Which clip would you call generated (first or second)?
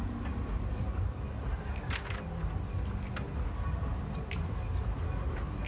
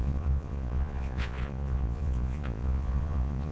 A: second